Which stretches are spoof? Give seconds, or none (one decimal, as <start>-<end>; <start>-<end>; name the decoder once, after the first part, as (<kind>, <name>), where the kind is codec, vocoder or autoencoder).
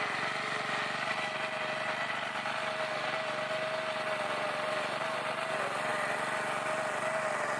none